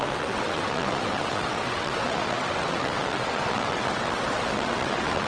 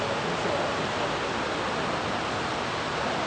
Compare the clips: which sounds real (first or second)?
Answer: second